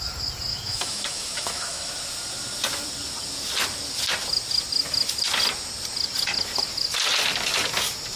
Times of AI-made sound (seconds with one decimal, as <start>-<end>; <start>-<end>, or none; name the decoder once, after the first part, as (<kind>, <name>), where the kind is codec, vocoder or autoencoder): 0.5-1.9 (autoencoder, DAC-VAE)